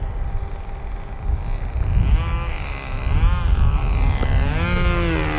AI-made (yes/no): no